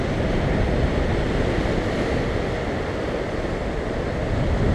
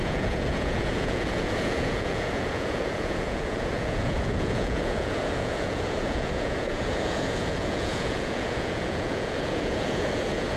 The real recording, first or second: first